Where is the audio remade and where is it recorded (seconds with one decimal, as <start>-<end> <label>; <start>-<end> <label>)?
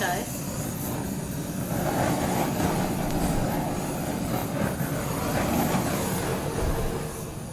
0.0-7.5 recorded